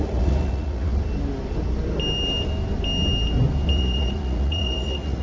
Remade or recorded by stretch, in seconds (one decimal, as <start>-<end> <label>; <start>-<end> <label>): 0.0-0.9 remade; 0.9-3.7 recorded; 3.7-5.2 remade